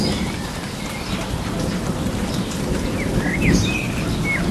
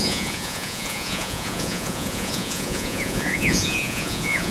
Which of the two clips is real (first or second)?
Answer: first